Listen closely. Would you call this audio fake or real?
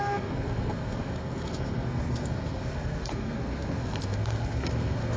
fake